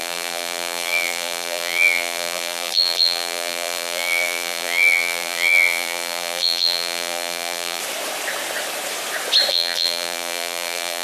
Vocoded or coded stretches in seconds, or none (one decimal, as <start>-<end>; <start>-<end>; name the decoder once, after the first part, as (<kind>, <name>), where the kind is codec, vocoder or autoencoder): 0.0-7.8 (vocoder, BigVGAN v2); 9.5-11.0